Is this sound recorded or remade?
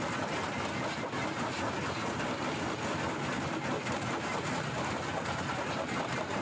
recorded